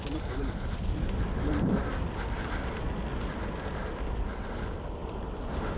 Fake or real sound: real